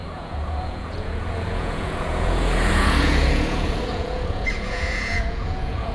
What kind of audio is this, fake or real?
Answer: fake